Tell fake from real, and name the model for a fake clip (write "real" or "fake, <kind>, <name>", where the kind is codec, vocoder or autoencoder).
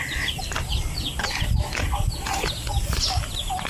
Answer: real